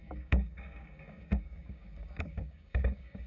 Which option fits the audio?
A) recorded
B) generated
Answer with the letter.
B